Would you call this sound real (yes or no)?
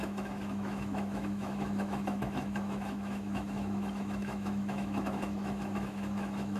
no